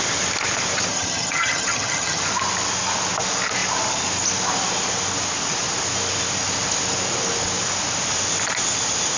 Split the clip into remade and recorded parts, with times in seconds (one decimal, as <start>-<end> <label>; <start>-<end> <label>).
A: 0.0-0.9 recorded; 0.9-2.2 remade; 2.2-9.2 recorded